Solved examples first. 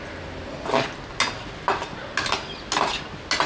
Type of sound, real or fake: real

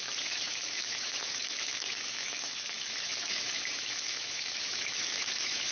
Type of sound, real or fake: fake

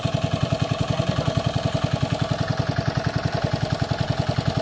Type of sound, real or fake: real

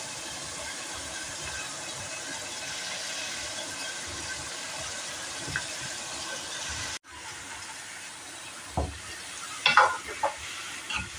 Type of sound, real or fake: real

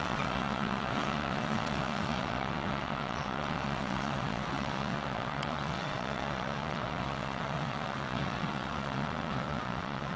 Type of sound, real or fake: fake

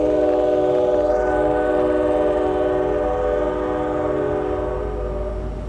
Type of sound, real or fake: real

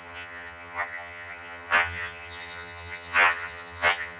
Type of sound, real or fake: fake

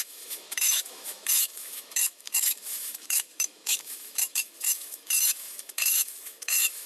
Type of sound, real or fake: fake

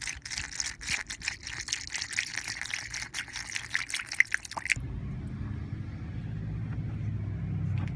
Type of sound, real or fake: real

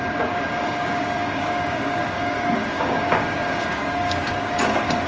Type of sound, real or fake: fake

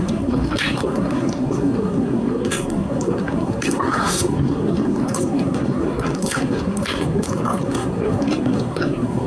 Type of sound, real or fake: fake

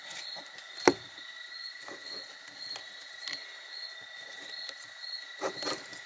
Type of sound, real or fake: real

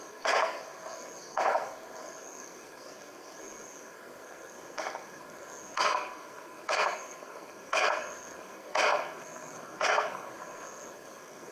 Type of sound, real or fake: fake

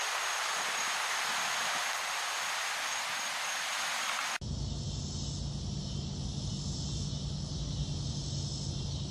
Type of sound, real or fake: real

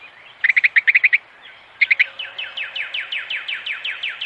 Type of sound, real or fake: real